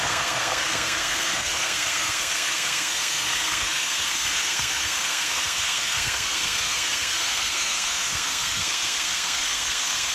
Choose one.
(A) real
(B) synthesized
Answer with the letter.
B